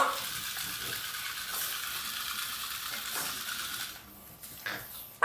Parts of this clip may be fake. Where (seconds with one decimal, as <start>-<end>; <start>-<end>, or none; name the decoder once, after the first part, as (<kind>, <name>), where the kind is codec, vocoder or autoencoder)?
none